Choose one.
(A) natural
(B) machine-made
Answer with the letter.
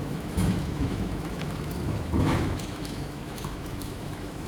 B